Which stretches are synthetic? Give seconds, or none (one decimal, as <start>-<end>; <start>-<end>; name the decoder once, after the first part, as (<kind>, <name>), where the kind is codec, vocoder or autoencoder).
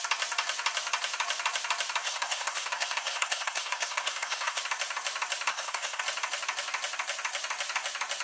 2.0-4.6 (codec, SNAC); 5.5-6.0